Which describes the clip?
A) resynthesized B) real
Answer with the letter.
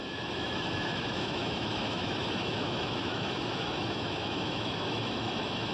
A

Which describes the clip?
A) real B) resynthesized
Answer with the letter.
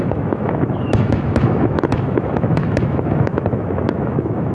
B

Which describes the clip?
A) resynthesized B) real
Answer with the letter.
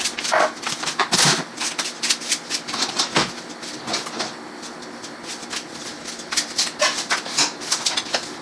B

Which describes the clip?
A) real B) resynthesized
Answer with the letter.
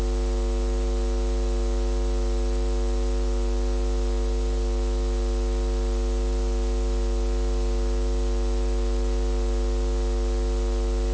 A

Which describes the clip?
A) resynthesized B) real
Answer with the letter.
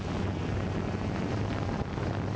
B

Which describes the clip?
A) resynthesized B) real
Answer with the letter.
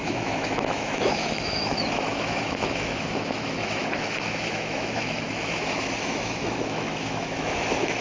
A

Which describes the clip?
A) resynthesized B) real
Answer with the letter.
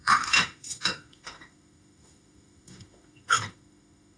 A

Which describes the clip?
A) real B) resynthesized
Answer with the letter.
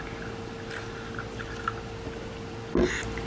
A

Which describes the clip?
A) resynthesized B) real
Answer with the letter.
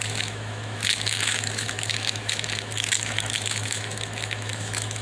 A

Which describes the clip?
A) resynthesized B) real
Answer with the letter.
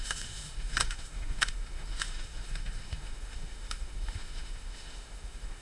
A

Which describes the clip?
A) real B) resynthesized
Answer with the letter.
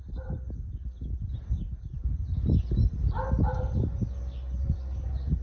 A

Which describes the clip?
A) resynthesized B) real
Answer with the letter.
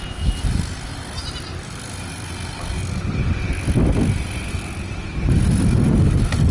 B